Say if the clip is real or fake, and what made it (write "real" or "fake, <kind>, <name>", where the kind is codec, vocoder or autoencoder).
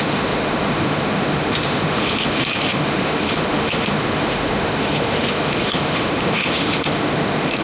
fake, autoencoder, DAC-VAE